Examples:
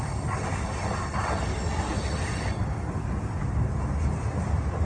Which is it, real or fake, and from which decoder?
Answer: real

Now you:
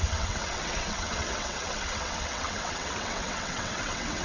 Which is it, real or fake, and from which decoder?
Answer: fake, vocoder, WaveNeXt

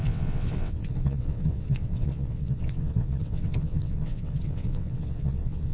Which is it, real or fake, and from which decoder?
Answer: fake, vocoder, WaveNeXt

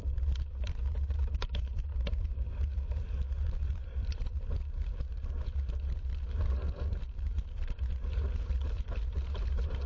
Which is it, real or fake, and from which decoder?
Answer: fake, vocoder, BigVGAN v2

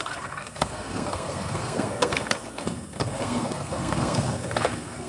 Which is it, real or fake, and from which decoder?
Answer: fake, codec, SNAC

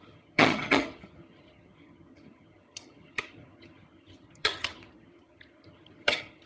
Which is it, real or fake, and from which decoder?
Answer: fake, vocoder, HiFi-GAN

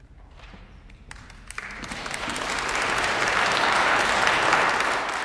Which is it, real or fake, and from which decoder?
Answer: fake, vocoder, BigVGAN v2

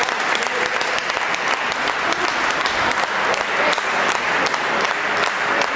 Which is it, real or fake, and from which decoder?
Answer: real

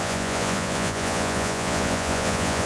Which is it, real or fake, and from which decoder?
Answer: fake, vocoder, Vocos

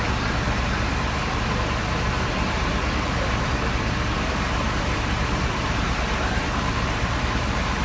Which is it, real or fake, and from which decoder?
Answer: fake, vocoder, BigVGAN v2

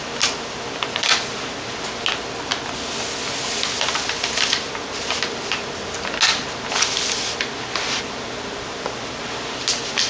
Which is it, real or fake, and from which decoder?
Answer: real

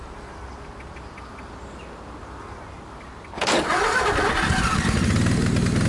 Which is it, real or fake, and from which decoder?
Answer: real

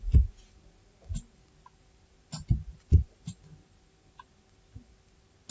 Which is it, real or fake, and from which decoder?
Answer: real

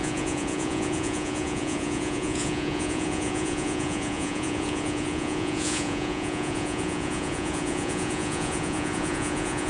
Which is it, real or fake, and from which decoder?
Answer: fake, vocoder, Vocos